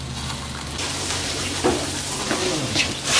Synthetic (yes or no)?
no